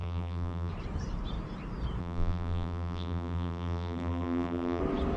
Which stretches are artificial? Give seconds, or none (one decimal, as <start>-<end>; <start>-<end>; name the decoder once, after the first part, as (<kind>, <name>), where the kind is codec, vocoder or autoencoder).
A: 0.0-0.7 (vocoder, BigVGAN v2); 2.0-4.8